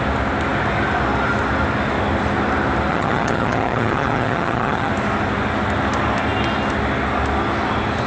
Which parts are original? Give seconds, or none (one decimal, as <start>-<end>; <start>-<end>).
0.0-2.9; 4.9-8.1